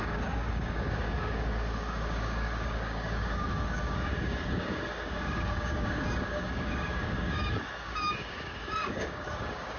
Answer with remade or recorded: remade